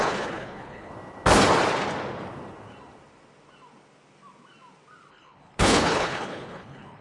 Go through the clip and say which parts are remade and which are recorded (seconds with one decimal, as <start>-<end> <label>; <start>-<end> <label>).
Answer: 0.0-0.9 remade; 0.9-5.1 recorded; 5.1-7.0 remade